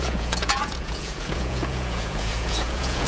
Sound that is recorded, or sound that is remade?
remade